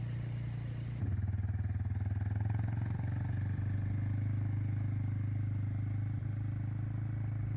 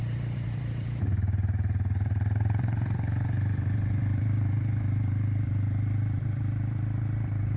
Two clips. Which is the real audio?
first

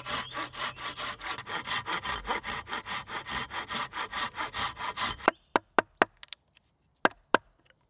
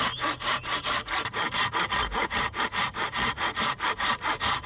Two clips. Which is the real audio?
first